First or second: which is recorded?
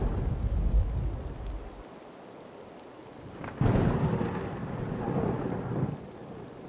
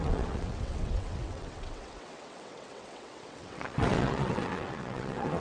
first